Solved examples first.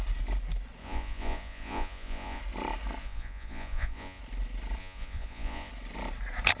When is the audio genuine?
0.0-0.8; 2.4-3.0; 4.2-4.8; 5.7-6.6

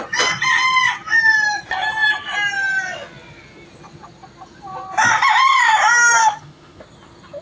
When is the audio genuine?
0.0-6.2; 6.8-7.4

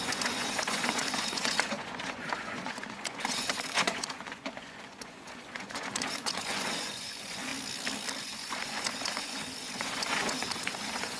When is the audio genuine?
7.5-8.2

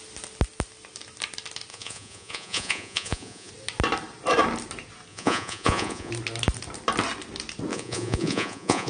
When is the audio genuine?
0.0-1.7; 3.5-5.1; 6.1-7.7

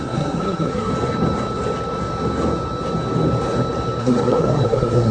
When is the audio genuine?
0.9-4.0

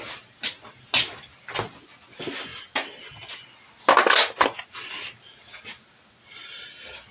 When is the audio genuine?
0.0-7.1

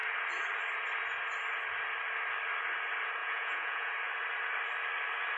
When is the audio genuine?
0.0-3.2; 3.9-5.4

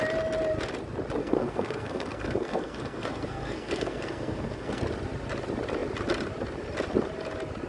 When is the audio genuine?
0.0-1.2; 4.8-7.7